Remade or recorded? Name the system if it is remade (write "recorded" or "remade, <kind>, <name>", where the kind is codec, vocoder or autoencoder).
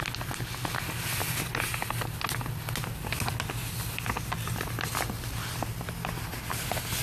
recorded